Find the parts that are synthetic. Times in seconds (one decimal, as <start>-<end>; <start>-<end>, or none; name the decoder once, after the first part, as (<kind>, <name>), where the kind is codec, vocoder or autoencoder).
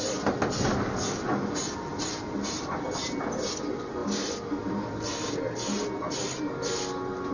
none